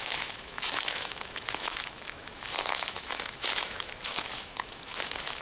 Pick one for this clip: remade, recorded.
remade